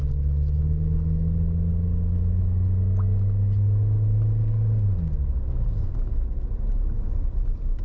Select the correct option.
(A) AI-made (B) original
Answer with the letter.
B